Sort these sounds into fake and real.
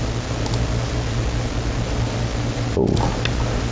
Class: real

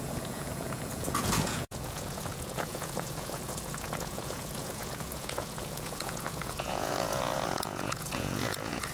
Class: fake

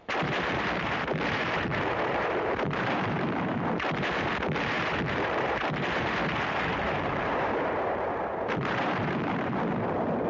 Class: fake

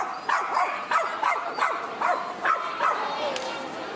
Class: real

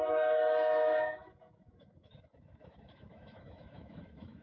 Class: fake